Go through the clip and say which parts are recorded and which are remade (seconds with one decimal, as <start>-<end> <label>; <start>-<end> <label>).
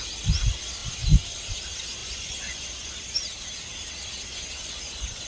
0.0-2.0 recorded; 2.0-2.9 remade; 2.9-4.3 recorded; 4.3-5.3 remade